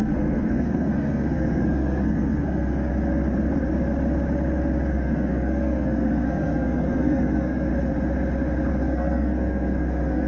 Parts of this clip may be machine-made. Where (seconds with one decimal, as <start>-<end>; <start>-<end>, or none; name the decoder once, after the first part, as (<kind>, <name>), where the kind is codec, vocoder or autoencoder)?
0.0-2.9 (codec, SNAC); 4.9-7.7; 8.7-10.3